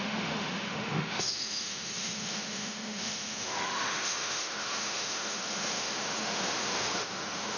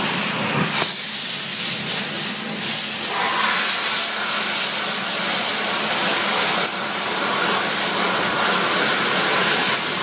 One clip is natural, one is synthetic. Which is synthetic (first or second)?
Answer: first